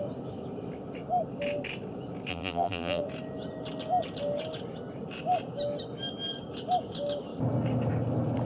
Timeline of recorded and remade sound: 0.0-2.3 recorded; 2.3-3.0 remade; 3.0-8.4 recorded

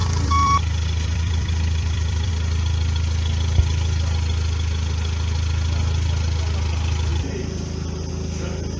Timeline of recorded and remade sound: 0.0-2.3 remade; 2.3-7.1 recorded; 7.1-8.1 remade; 8.1-8.8 recorded

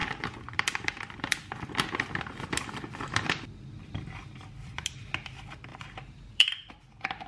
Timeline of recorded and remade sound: 0.0-5.7 recorded; 5.7-6.7 remade; 6.7-7.3 recorded

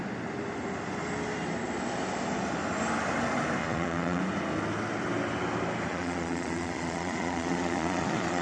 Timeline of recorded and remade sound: 0.0-3.6 recorded; 3.6-4.2 remade; 4.2-5.9 recorded; 5.9-8.4 remade

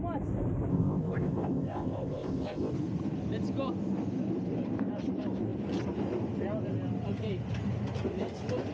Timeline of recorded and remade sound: 0.0-0.7 recorded; 0.7-2.7 remade; 2.7-8.7 recorded

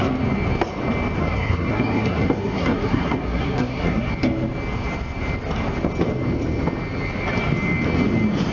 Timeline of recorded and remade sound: 0.0-1.2 recorded; 1.2-4.1 remade; 4.1-8.5 recorded